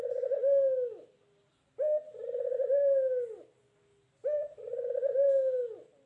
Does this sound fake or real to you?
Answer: real